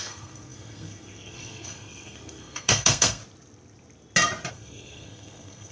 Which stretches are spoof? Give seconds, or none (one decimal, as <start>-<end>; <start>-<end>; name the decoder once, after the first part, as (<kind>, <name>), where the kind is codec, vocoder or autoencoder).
0.0-3.2 (codec, SNAC); 4.5-5.7